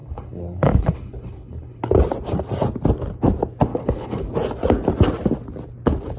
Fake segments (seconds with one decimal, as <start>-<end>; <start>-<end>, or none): 0.0-1.8; 3.7-4.3